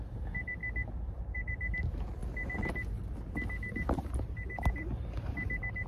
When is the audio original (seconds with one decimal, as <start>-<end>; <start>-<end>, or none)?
0.6-1.2; 2.2-5.9